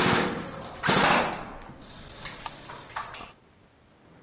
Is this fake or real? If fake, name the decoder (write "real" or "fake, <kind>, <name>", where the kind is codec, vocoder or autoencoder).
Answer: real